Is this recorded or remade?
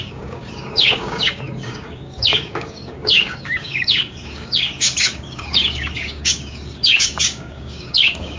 remade